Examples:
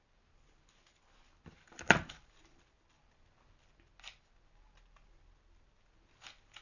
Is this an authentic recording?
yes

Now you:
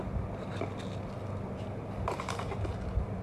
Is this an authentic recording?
yes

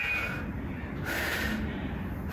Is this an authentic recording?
yes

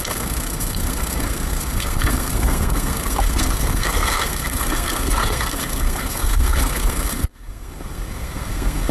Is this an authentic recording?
no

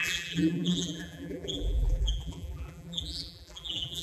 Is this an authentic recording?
no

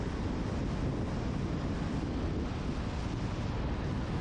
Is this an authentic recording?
yes